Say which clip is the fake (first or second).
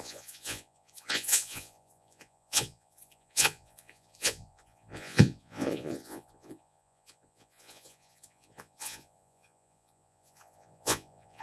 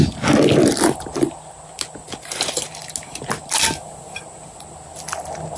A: first